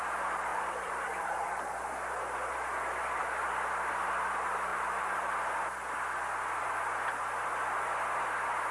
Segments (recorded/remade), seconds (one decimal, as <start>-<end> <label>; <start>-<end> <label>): 0.0-0.5 recorded; 0.5-1.8 remade; 1.8-4.7 recorded; 4.7-5.3 remade; 5.3-8.7 recorded